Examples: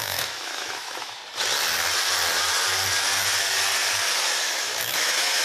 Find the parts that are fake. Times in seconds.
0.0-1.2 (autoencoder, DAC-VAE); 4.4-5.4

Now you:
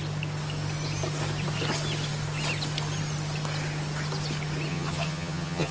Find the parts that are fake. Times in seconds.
4.7-5.7 (vocoder, HiFi-GAN)

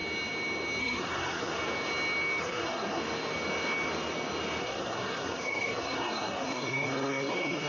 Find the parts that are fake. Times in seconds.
0.8-1.6 (codec, SNAC); 2.4-3.0; 4.6-7.7

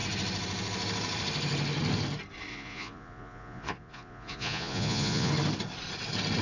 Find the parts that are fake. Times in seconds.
2.5-5.3 (vocoder, Vocos)

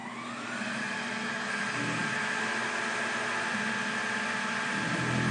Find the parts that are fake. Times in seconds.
none